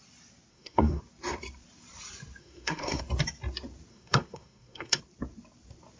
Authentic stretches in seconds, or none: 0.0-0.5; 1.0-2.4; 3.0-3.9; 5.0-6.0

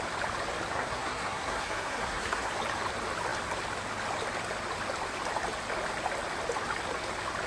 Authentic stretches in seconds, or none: 0.0-0.7; 2.5-7.5

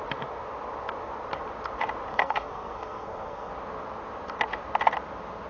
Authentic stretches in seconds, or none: 0.0-2.1; 3.5-5.5

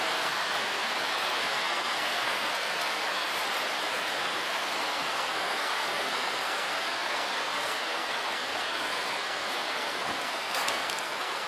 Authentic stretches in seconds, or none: 3.3-3.8

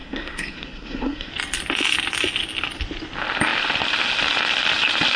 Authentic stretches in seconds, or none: 1.3-5.2

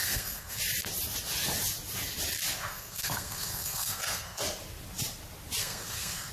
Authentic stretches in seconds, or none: 0.6-2.6; 4.4-5.6

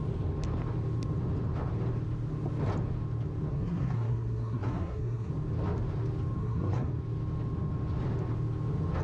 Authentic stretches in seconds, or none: 0.0-3.5; 5.3-6.4; 6.9-9.0

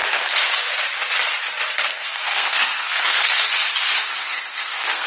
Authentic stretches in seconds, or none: 0.0-1.9; 3.4-4.2